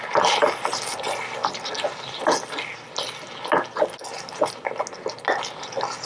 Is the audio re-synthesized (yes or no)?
no